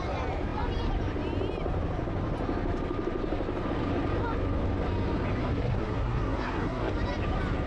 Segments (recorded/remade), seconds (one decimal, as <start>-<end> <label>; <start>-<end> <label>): 0.0-5.4 recorded; 5.4-6.9 remade; 6.9-7.7 recorded